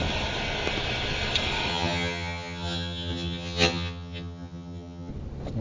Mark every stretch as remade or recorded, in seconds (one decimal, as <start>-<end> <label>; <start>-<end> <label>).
0.0-1.7 recorded; 1.7-5.1 remade; 5.1-5.6 recorded